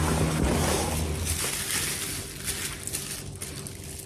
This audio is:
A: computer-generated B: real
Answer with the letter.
B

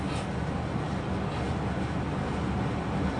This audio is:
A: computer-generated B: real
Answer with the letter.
B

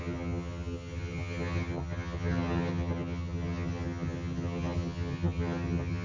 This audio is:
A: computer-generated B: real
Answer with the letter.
A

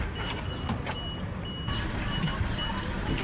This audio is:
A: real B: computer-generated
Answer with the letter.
A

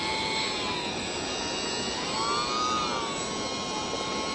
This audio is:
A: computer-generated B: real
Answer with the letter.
B